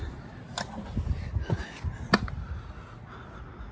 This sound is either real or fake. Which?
real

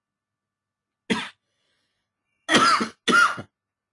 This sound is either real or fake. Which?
real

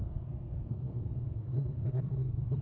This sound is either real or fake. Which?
fake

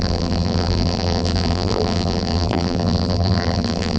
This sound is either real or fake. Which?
fake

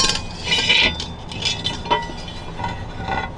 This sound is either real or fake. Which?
real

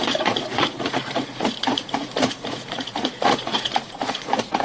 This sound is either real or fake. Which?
fake